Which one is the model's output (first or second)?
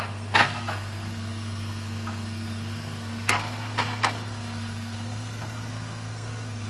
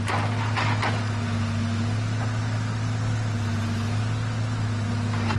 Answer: first